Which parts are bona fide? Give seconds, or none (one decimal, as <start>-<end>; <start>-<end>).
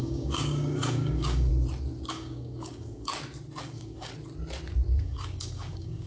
1.5-2.1; 3.1-3.6; 4.1-5.0